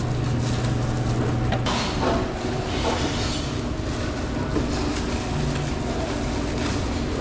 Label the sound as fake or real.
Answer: real